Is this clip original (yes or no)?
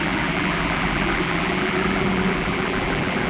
no